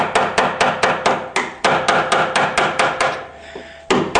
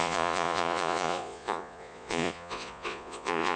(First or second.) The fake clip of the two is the second